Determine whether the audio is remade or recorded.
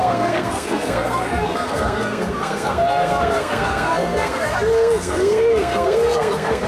remade